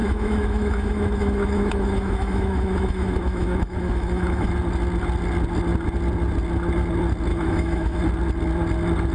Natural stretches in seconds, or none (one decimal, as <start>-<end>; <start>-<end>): 4.5-7.3; 8.0-9.1